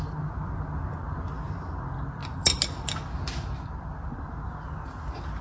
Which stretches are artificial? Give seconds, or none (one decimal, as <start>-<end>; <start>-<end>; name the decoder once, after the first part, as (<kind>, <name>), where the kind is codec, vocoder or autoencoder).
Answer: none